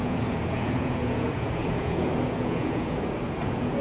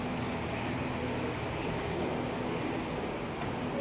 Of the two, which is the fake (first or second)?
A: first